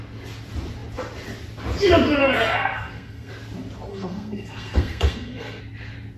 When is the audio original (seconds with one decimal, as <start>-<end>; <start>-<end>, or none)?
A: 0.0-2.2; 3.3-3.9; 5.6-6.2